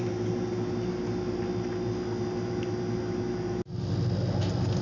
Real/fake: real